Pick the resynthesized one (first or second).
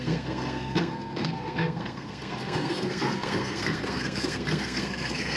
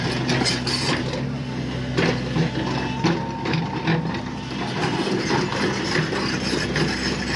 first